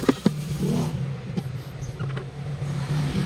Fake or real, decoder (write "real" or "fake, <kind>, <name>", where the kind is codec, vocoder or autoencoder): fake, vocoder, BigVGAN v2